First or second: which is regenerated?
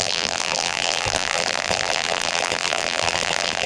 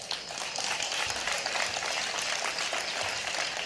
first